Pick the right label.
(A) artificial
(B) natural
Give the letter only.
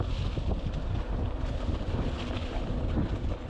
B